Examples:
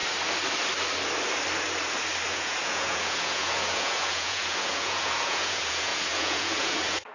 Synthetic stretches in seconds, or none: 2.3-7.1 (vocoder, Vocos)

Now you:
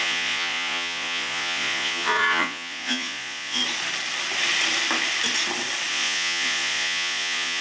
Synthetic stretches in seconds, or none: 0.0-3.6 (vocoder, Vocos); 5.9-7.6